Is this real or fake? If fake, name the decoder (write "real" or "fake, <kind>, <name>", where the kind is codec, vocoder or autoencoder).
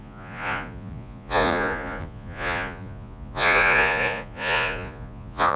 fake, vocoder, Vocos